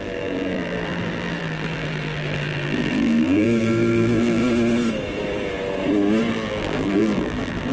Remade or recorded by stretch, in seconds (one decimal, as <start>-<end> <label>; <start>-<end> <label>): 0.0-4.4 remade; 4.4-6.3 recorded; 6.3-7.7 remade